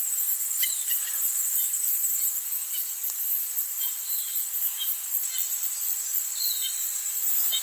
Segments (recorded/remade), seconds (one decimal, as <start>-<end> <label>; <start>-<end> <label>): 0.0-1.9 recorded; 1.9-2.5 remade; 2.5-3.6 recorded; 3.6-4.9 remade; 4.9-6.6 recorded; 6.6-7.6 remade